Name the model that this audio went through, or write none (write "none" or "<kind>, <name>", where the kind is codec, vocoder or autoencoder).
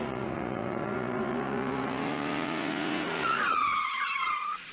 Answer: vocoder, Vocos